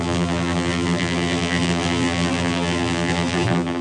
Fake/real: fake